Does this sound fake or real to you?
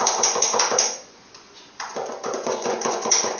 fake